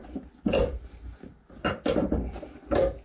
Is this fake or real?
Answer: real